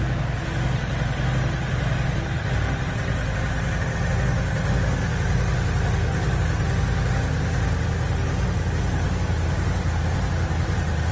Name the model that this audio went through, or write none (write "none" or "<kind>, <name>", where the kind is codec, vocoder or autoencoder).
none